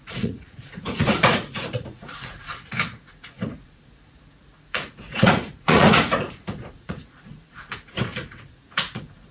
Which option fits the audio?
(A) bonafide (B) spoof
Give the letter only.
B